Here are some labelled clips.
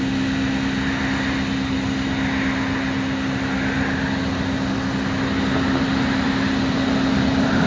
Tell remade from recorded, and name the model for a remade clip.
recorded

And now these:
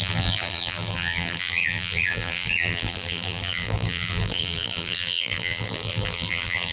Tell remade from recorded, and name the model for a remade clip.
remade, vocoder, BigVGAN v2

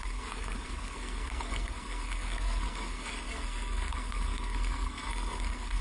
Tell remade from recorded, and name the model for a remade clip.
remade, codec, SNAC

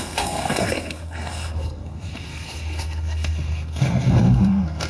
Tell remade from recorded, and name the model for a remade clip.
remade, codec, SNAC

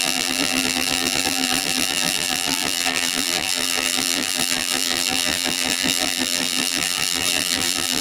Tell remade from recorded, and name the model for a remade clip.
remade, vocoder, BigVGAN v2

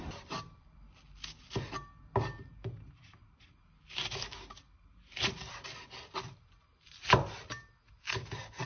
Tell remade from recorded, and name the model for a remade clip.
recorded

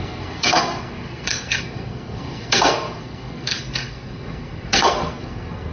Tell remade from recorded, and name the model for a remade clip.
remade, codec, SNAC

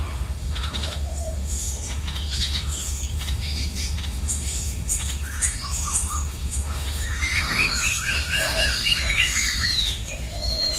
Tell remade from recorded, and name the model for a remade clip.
remade, autoencoder, DAC-VAE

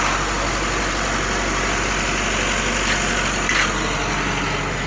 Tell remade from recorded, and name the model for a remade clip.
recorded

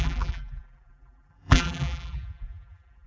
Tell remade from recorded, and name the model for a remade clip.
remade, vocoder, BigVGAN v2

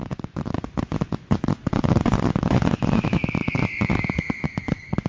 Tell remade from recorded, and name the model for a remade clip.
remade, vocoder, Vocos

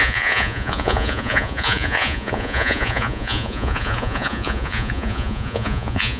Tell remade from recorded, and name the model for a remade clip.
remade, vocoder, Vocos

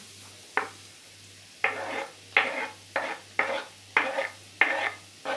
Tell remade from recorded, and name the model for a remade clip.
recorded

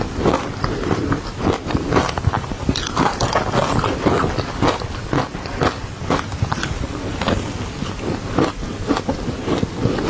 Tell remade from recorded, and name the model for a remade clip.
recorded